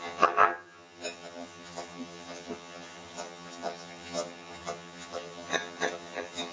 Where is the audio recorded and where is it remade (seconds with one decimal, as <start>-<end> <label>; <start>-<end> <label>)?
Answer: 0.0-6.5 remade